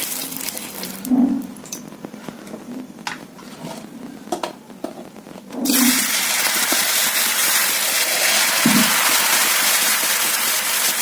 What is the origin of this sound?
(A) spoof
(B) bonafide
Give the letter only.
A